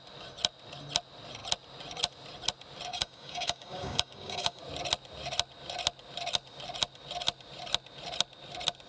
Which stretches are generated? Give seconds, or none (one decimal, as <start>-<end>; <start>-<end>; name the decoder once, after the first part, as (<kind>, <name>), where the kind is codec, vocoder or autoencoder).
2.9-4.6 (codec, DAC)